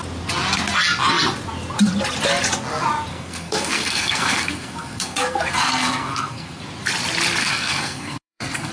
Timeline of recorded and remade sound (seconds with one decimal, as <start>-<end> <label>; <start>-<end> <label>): 0.0-3.1 recorded; 3.1-6.6 remade; 6.6-7.4 recorded; 7.4-8.7 remade